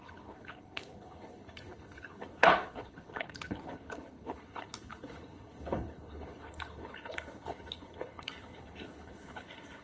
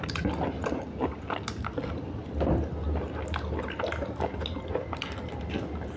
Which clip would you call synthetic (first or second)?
first